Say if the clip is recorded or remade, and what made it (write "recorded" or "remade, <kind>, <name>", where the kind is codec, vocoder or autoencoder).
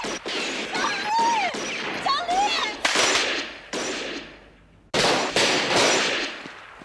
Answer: recorded